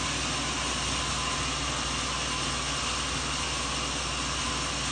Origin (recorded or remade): recorded